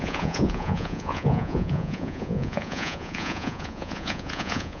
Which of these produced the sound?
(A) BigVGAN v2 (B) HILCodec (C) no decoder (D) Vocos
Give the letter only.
D